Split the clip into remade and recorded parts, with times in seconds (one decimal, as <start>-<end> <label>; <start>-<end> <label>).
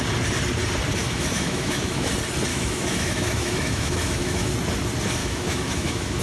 0.0-1.0 recorded; 1.0-2.1 remade; 2.1-2.5 recorded; 2.5-4.5 remade; 4.5-5.2 recorded; 5.2-6.2 remade